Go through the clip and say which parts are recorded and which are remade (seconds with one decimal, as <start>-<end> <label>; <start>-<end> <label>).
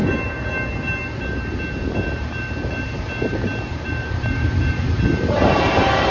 0.0-1.7 recorded; 1.7-6.1 remade